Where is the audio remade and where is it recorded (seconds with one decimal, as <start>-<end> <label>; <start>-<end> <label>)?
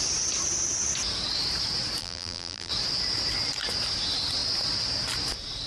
0.0-2.0 recorded; 2.0-2.7 remade; 2.7-5.7 recorded